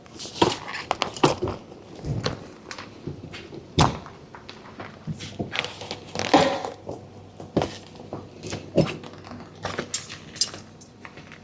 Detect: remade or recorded recorded